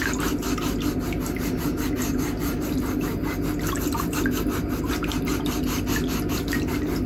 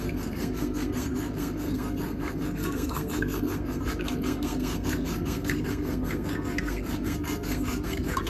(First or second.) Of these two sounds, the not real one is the second